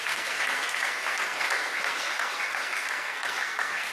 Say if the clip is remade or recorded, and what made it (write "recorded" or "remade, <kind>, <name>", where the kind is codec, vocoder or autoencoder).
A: remade, codec, SNAC